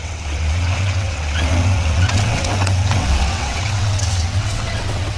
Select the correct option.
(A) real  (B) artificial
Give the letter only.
B